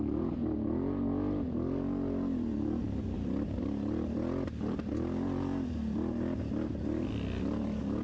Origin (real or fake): fake